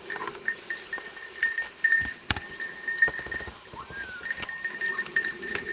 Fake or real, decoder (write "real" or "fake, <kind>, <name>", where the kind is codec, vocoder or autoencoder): real